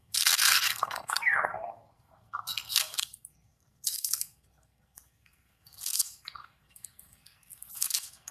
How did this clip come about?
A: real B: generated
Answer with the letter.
B